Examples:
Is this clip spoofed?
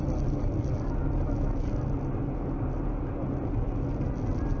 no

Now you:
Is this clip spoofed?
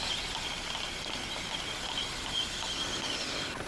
no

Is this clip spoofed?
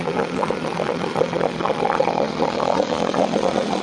yes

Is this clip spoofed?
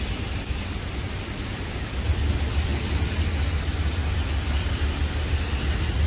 no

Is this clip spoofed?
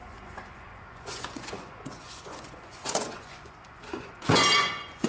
yes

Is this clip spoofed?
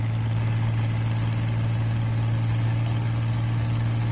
no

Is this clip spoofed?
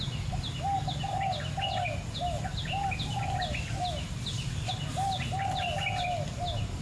no